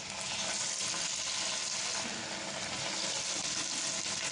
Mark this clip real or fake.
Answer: real